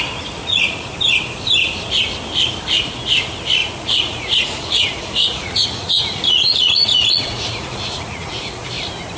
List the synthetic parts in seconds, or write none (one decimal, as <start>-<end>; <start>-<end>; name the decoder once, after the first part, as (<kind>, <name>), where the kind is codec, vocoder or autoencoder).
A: 0.4-0.9 (vocoder, Vocos); 3.6-8.7